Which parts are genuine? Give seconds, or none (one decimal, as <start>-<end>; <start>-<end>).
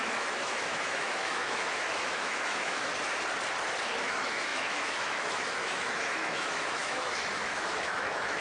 2.9-4.0